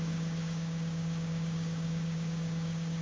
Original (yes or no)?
no